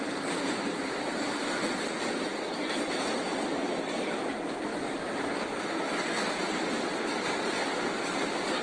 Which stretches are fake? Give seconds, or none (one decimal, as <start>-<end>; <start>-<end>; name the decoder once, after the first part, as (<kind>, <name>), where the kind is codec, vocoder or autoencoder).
0.7-2.6 (vocoder, BigVGAN v2); 3.6-4.3; 4.7-7.0